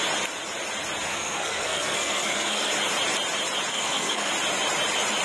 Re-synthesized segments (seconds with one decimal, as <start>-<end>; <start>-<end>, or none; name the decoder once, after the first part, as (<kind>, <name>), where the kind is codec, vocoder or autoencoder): 1.1-2.7 (codec, SNAC); 3.7-4.3